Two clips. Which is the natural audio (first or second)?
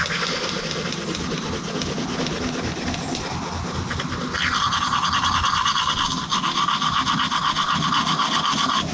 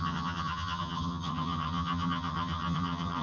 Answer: first